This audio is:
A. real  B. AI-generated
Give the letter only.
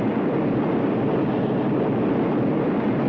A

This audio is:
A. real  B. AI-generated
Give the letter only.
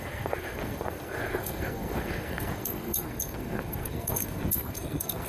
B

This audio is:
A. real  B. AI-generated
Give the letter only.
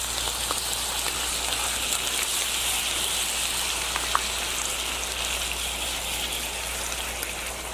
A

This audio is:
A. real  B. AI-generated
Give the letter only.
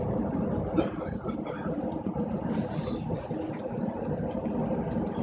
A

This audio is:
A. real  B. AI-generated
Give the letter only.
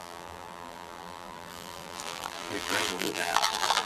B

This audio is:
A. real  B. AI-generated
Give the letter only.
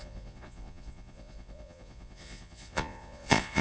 B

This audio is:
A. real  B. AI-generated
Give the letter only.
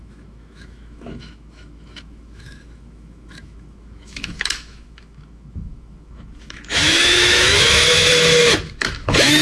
B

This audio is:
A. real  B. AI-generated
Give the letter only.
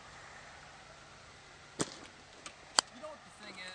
B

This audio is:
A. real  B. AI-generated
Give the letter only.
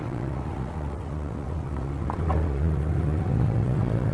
B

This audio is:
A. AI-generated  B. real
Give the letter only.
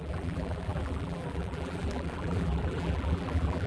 A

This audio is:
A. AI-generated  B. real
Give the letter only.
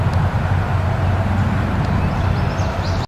B